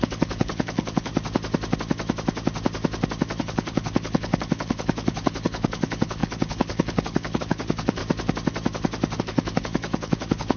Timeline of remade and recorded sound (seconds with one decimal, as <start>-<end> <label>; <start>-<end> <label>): 0.0-1.1 remade; 1.1-3.4 recorded; 3.4-8.0 remade; 8.0-9.2 recorded; 9.2-10.6 remade